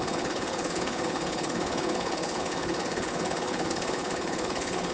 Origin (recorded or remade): remade